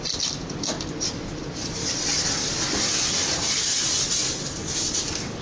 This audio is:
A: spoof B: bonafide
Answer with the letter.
A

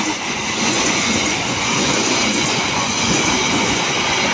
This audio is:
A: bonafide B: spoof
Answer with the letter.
B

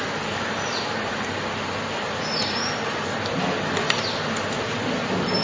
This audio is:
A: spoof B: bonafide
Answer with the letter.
B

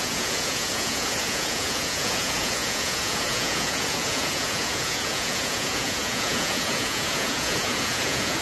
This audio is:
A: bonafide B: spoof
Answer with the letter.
B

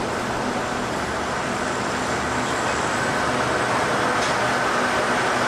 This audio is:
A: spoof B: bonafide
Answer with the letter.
B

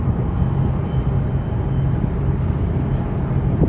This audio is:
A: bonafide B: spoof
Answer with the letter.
A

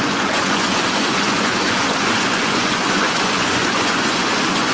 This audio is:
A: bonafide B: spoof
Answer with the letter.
B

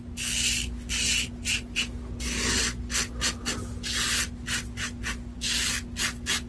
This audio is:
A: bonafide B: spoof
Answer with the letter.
A